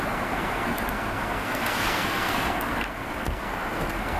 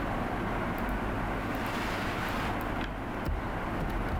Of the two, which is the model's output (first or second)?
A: first